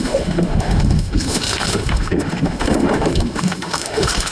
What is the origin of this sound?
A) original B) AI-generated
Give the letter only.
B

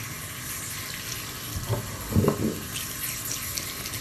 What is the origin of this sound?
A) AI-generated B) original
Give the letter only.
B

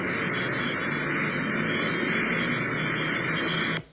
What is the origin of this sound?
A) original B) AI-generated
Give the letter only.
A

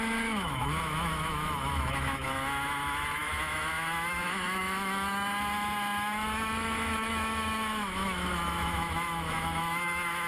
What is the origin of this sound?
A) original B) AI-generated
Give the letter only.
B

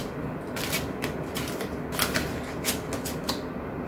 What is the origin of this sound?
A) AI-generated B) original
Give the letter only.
B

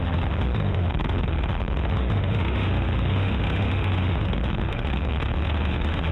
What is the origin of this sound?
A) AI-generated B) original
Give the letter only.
A